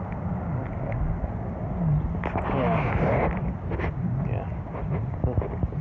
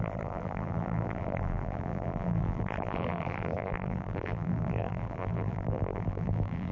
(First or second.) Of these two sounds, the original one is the first